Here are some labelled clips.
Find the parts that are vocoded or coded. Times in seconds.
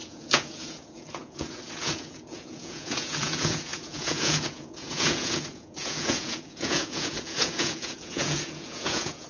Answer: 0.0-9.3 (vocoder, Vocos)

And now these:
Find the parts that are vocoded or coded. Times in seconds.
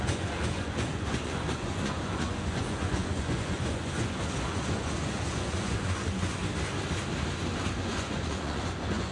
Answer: 0.0-6.4 (vocoder, Vocos); 7.8-9.1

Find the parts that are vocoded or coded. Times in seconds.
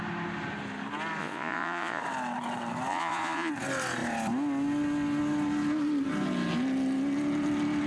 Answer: 1.2-2.0 (vocoder, Vocos); 2.9-3.5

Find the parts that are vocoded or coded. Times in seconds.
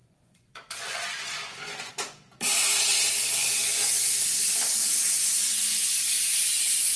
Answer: 0.0-1.9 (vocoder, Vocos); 3.4-4.0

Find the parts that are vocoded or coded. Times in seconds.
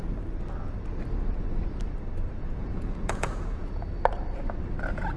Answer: 2.4-3.7 (vocoder, Vocos)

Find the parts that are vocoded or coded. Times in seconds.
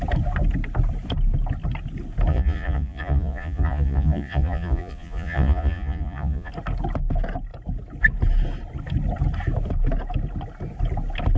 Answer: 2.3-6.5 (vocoder, Vocos)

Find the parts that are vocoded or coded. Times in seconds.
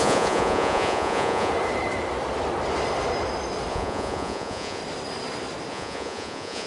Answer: 0.0-1.5 (vocoder, Vocos); 3.7-4.8; 5.7-6.7